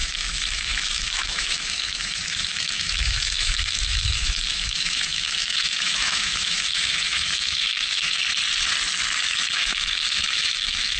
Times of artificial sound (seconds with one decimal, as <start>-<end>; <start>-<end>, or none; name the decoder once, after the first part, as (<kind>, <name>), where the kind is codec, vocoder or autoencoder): 0.0-8.2 (autoencoder, DAC-VAE); 9.2-11.0